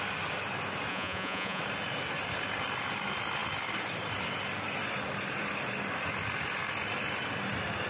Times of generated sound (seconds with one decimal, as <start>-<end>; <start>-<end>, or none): 0.9-1.6